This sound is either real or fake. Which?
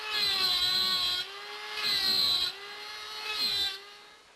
real